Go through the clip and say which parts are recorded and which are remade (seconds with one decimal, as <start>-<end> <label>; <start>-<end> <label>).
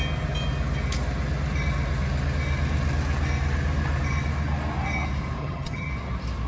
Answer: 0.0-5.4 recorded; 5.4-5.9 remade; 5.9-6.5 recorded